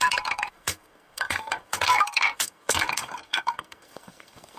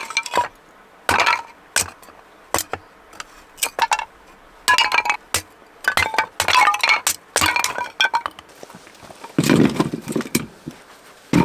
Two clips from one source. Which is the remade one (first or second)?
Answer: first